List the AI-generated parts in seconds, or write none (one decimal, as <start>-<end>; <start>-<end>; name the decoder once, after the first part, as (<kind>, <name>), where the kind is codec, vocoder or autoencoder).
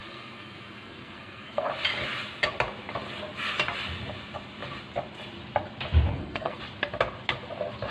0.0-1.7 (codec, SNAC); 6.1-6.6